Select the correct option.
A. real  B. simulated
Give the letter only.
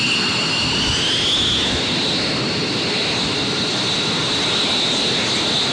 A